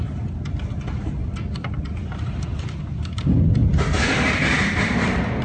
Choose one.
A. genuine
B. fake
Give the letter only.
A